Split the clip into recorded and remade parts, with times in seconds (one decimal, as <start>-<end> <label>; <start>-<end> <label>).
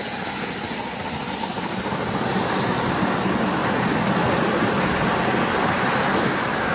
0.0-6.7 recorded